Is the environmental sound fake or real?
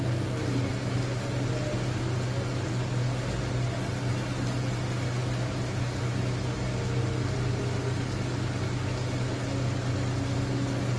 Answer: real